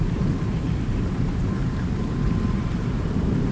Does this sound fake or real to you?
fake